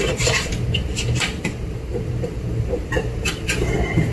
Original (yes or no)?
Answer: no